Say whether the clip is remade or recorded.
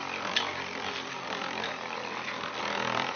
remade